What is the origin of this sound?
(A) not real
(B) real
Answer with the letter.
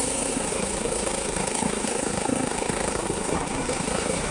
A